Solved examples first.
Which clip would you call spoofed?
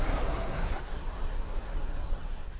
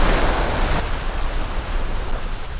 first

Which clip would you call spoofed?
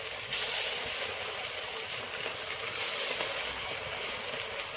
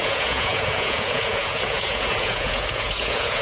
second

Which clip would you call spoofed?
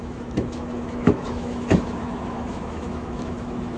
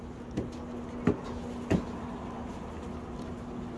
first